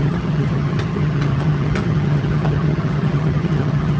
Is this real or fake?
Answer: fake